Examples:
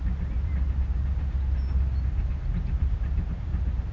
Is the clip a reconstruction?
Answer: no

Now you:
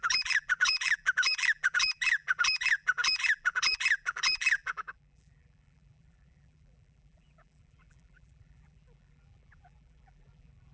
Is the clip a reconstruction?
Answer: yes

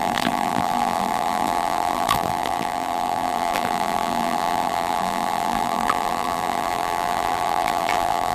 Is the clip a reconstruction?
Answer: yes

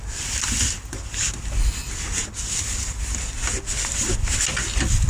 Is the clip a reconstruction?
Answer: no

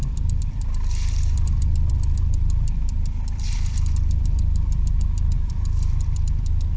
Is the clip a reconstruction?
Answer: yes